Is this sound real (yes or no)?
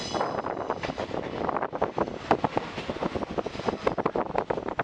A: yes